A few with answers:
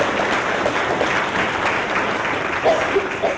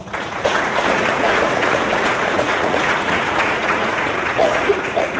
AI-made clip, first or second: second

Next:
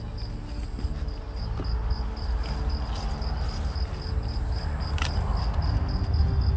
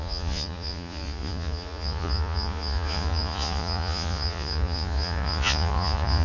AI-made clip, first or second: second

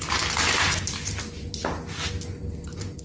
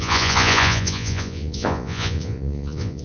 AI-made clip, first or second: second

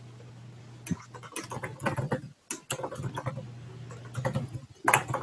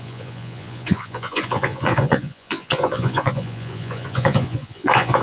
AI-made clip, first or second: second